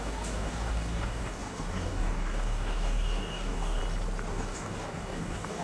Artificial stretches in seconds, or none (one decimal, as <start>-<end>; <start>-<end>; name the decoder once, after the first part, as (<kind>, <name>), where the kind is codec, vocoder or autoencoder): 0.0-3.8 (codec, DAC); 4.3-5.6